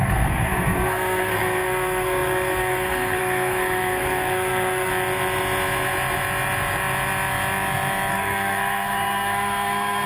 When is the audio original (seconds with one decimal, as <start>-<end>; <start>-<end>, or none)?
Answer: 4.9-8.1